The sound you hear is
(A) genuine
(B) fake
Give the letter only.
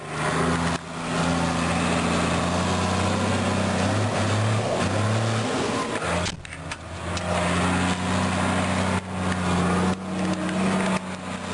A